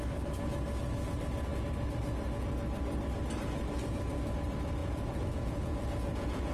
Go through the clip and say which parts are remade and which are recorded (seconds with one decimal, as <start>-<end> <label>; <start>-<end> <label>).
0.0-4.8 recorded; 4.8-6.5 remade